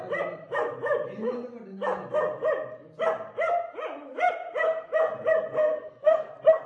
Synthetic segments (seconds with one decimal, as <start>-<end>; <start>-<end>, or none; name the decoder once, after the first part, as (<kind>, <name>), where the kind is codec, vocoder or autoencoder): 5.6-6.3 (codec, SNAC)